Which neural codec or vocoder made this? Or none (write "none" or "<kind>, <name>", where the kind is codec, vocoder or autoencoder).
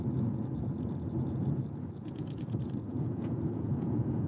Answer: vocoder, Vocos